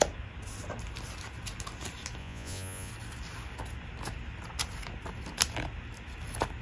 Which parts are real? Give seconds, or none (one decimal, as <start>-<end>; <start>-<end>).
0.0-2.2; 2.9-6.6